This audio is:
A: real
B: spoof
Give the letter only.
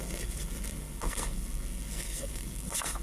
B